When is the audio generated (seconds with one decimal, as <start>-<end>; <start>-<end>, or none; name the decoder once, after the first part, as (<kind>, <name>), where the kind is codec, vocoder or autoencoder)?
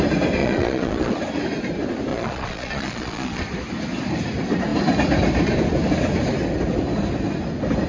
0.4-1.1 (vocoder, Vocos); 2.1-3.4